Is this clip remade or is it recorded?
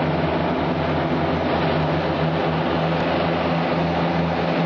recorded